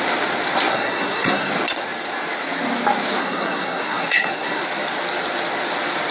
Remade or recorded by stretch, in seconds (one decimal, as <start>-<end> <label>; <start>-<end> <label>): 0.0-0.7 recorded; 0.7-1.5 remade; 1.5-3.2 recorded; 3.2-4.6 remade; 4.6-6.1 recorded